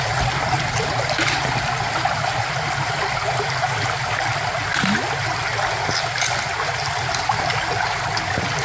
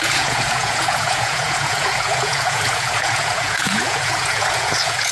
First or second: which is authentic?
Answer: first